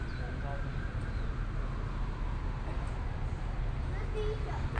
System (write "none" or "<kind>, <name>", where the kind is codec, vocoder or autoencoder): none